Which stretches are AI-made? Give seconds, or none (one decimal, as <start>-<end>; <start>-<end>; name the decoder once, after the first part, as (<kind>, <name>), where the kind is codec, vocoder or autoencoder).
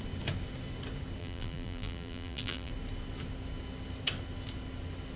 1.2-2.7 (vocoder, BigVGAN v2)